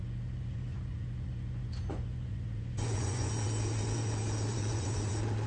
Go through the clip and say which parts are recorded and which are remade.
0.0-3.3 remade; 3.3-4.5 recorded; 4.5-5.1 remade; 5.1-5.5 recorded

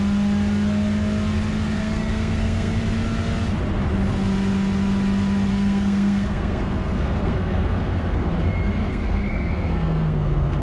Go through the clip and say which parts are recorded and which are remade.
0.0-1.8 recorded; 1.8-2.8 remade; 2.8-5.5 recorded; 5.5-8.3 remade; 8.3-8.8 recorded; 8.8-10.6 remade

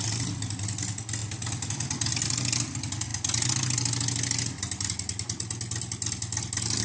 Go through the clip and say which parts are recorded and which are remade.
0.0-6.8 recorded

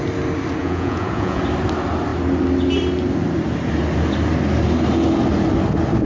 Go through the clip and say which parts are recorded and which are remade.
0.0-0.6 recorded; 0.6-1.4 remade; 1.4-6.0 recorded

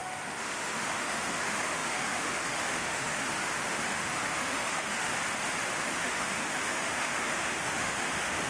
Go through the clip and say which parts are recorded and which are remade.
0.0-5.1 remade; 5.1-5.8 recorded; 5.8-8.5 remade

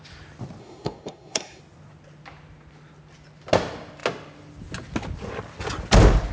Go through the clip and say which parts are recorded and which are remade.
0.0-0.6 recorded; 0.6-1.6 remade; 1.6-6.3 recorded

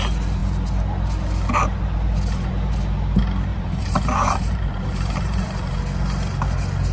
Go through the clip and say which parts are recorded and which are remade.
0.0-3.5 recorded; 3.5-5.8 remade; 5.8-6.9 recorded